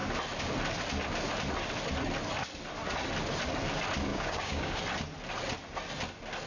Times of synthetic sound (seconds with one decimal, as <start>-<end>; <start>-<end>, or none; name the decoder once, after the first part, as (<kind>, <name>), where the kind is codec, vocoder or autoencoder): 4.1-4.8 (codec, DAC)

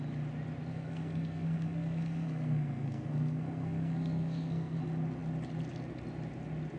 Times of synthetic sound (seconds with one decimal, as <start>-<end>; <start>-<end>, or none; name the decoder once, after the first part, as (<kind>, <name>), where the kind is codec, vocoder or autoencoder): 0.7-4.8 (codec, SNAC)

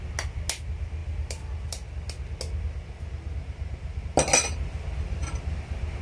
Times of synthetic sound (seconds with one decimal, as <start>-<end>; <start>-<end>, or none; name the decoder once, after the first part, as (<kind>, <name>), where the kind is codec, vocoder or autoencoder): none

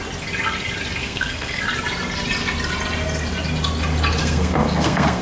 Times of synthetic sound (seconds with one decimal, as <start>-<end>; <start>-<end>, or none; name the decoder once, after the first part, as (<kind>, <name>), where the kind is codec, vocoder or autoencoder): 1.0-1.6 (codec, SNAC); 4.2-5.2